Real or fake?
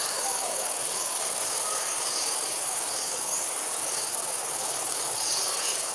fake